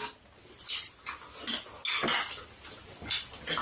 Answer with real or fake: real